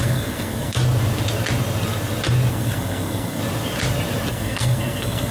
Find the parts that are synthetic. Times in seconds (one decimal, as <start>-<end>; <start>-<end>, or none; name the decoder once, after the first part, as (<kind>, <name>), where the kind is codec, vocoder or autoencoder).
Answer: 0.0-0.8 (codec, SNAC); 2.5-3.4; 4.3-5.3